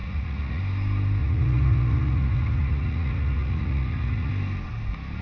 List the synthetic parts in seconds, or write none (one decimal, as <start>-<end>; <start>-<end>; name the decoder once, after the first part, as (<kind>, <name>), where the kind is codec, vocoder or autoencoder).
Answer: 0.0-0.6 (vocoder, Vocos); 1.2-4.3